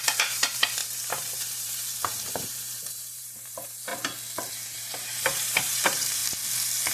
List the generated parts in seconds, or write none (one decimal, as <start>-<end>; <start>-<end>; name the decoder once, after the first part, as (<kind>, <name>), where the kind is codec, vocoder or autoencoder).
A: 0.0-3.9 (vocoder, BigVGAN v2); 4.5-6.2